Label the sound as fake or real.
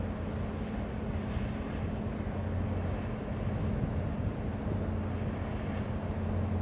real